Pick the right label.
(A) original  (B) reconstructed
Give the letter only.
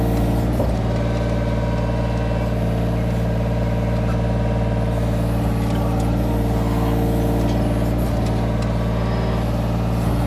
A